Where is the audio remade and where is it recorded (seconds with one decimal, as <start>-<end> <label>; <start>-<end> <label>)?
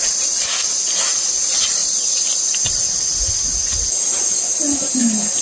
0.0-5.4 recorded